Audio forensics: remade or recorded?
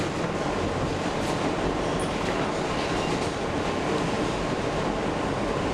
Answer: recorded